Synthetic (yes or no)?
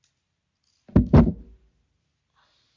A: no